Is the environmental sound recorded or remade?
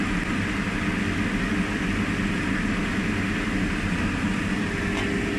recorded